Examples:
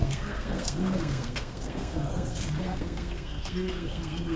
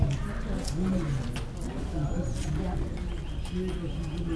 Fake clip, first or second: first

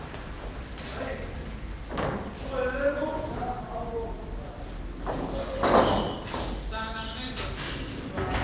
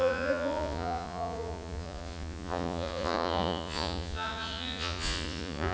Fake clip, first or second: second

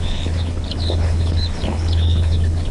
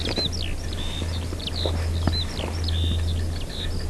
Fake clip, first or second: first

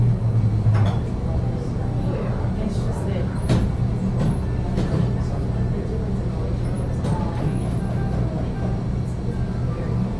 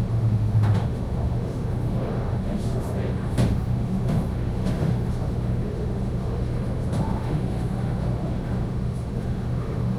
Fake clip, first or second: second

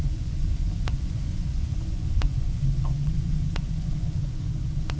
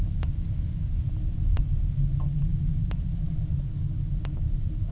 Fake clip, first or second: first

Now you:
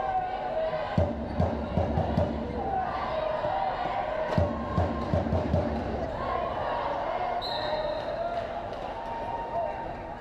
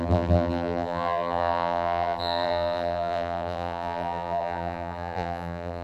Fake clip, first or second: second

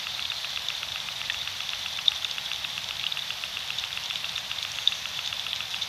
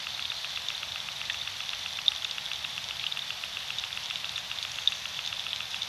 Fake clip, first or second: first